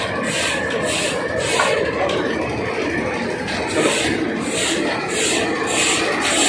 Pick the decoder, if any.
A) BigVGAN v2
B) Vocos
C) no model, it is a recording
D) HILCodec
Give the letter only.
C